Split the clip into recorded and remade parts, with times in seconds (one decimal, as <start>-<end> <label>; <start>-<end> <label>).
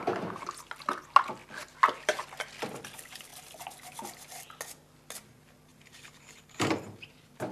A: 0.0-5.7 recorded; 5.7-7.5 remade